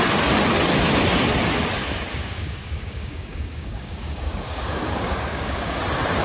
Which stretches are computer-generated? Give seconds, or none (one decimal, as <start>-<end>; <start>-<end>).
2.1-5.8